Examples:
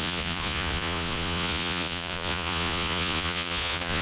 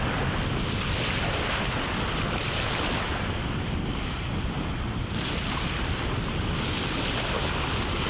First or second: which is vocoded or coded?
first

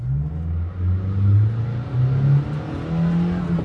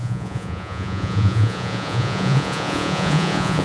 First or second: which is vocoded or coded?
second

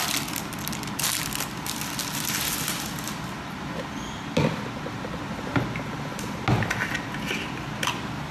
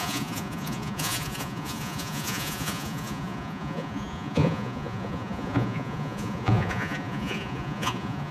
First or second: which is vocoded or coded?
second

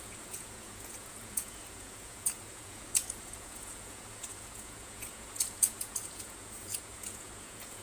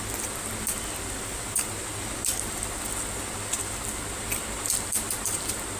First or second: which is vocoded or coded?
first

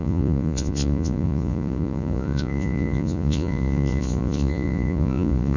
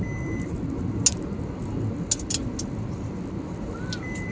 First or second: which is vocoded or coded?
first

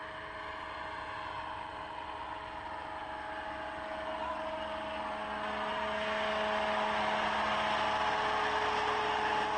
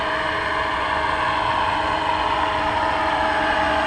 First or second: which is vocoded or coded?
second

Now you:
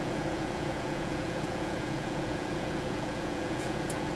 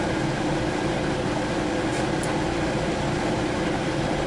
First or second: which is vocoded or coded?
first